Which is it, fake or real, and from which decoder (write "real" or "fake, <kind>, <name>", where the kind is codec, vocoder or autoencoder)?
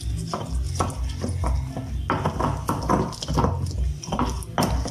real